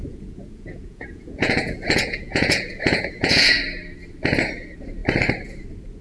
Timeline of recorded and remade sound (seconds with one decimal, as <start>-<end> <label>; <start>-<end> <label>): 0.0-3.6 remade; 3.6-6.0 recorded